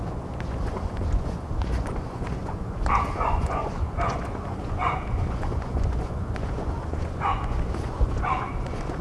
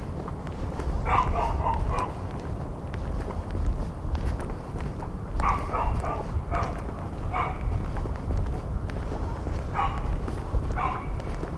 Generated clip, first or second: first